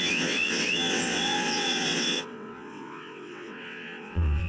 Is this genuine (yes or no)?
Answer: no